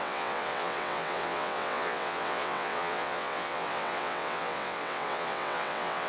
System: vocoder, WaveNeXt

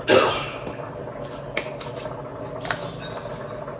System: none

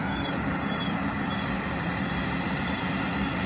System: none